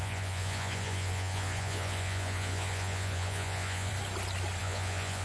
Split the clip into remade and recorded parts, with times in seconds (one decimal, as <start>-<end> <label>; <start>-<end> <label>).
0.0-3.9 remade; 3.9-4.6 recorded; 4.6-5.2 remade